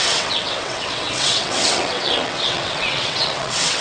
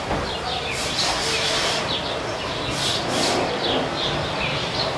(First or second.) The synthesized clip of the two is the first